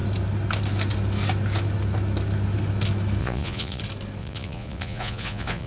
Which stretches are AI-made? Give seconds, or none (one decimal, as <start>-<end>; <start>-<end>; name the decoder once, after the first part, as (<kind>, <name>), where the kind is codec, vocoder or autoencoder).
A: 3.2-3.8 (vocoder, Vocos); 4.2-5.7